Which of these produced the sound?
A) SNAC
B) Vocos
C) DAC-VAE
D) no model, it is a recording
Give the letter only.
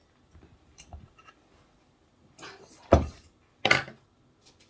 D